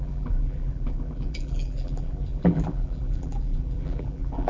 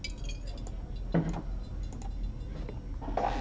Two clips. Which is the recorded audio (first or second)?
second